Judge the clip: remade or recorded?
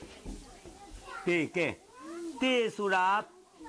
recorded